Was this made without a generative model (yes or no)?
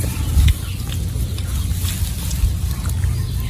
yes